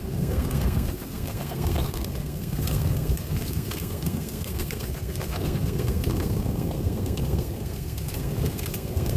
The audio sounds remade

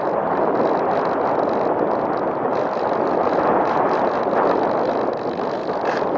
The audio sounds recorded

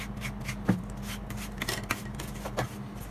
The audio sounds recorded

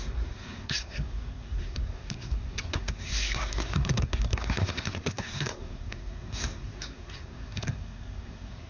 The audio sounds remade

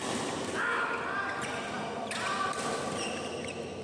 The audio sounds recorded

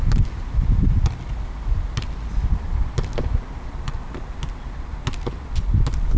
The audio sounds recorded